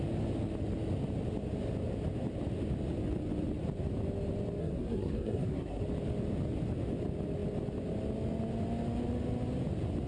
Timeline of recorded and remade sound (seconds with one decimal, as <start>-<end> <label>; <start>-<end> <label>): 0.0-4.6 recorded; 4.6-5.8 remade; 5.8-10.1 recorded